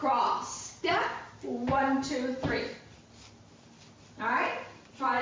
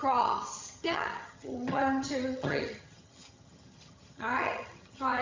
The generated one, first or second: second